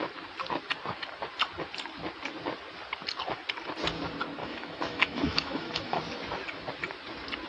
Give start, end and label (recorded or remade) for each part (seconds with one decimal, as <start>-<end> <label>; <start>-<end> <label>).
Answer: 0.0-4.4 recorded; 4.4-6.0 remade; 6.0-7.5 recorded